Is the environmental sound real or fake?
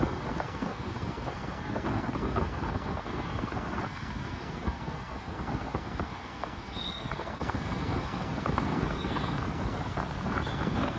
fake